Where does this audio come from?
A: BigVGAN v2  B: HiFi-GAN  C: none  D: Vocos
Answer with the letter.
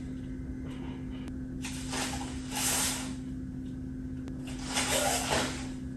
C